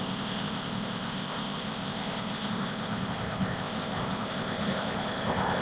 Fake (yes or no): yes